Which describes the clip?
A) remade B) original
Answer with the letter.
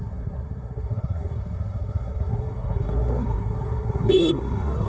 A